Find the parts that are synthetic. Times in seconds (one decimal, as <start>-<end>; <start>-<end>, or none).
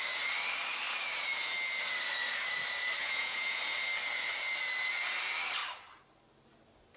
3.0-3.6